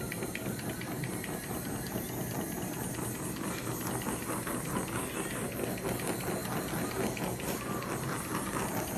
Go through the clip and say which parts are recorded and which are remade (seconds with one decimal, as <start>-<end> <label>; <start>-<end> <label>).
0.0-9.0 recorded